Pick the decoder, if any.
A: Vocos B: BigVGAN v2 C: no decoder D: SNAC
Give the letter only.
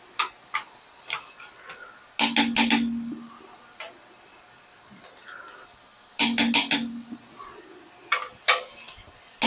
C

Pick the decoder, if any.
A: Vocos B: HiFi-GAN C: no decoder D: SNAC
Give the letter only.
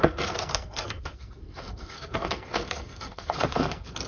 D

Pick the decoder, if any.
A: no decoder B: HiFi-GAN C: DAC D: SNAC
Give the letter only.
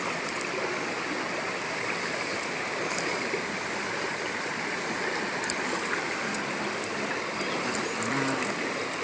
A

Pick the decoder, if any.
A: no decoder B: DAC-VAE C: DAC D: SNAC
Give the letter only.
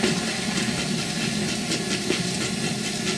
A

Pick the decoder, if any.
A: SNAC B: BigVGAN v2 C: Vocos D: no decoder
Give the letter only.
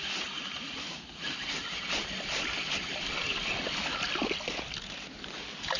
D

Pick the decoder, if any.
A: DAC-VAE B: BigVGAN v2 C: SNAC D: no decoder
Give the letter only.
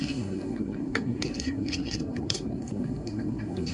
C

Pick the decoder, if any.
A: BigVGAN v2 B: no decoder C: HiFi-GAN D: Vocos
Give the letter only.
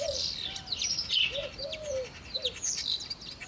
B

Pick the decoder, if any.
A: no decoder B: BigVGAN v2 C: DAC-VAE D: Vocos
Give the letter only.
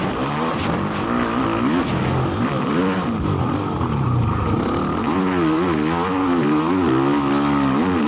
A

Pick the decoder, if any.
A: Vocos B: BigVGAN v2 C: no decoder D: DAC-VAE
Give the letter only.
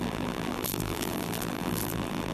B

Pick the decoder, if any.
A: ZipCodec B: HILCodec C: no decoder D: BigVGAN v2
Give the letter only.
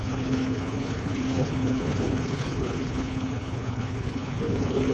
B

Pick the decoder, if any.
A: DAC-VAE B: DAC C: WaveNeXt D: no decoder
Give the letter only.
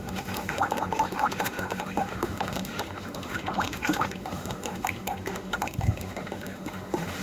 A